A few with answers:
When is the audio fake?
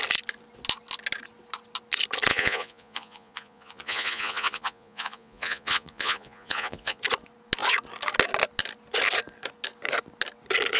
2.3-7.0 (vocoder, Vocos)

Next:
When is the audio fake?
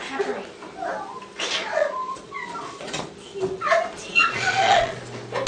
1.6-3.0 (vocoder, Vocos); 4.0-5.0